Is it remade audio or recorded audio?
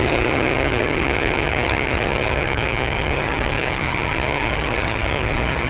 remade